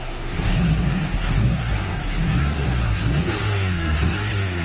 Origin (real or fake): fake